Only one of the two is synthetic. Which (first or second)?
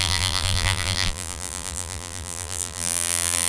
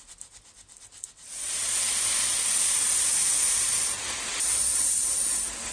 first